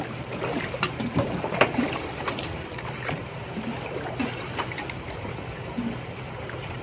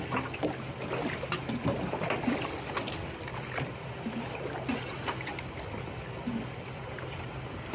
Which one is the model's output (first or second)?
first